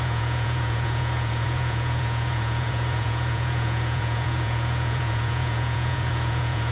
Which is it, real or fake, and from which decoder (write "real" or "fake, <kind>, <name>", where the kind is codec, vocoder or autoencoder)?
fake, vocoder, Vocos